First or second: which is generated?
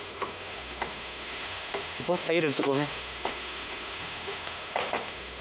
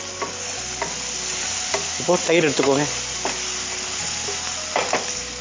first